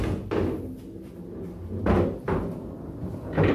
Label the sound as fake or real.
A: real